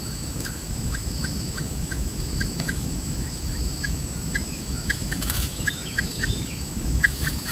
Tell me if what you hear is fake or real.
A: fake